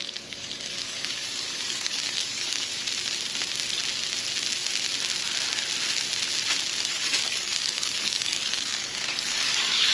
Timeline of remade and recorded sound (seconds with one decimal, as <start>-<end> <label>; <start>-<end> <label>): 0.0-2.7 remade; 2.7-6.8 recorded; 6.8-9.9 remade